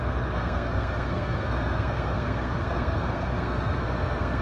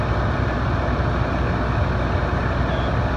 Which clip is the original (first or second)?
second